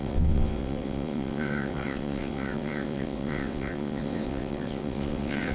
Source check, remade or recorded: remade